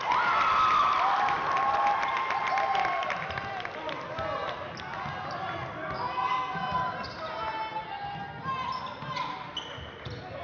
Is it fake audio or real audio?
real